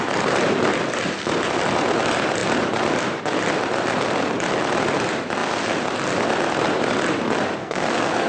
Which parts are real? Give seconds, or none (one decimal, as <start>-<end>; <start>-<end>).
0.0-7.6